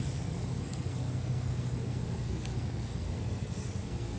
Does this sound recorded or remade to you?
remade